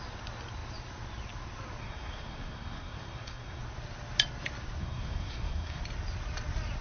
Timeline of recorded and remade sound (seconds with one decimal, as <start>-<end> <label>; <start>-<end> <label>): 0.0-1.8 recorded; 1.8-3.6 remade; 3.6-4.8 recorded; 4.8-5.8 remade; 5.8-6.8 recorded